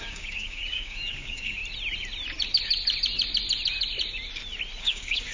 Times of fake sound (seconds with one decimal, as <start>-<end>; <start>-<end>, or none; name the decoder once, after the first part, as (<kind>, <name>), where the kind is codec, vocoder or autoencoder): 0.0-1.6 (codec, DAC); 4.8-5.3